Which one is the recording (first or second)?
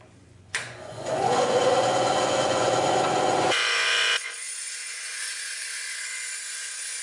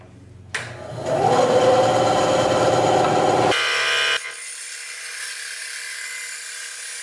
second